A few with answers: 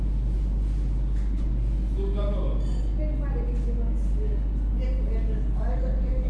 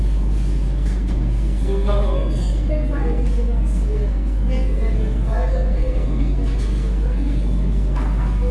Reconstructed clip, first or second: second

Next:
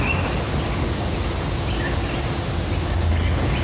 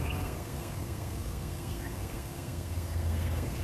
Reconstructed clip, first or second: second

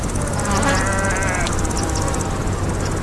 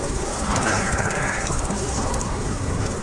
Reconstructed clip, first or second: second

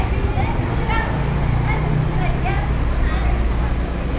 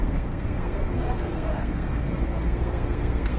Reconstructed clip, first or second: second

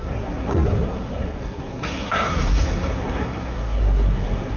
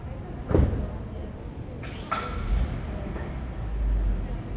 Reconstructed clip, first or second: first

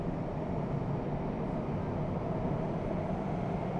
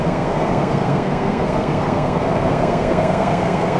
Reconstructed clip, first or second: second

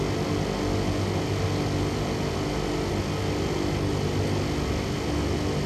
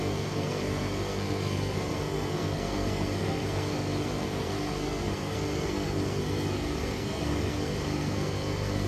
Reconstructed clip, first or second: second